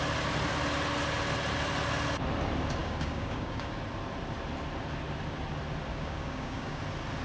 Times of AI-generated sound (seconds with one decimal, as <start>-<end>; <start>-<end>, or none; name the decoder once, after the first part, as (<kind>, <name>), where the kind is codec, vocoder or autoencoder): 2.8-3.7 (codec, DAC); 5.9-6.8